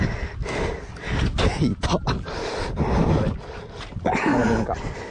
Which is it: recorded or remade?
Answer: recorded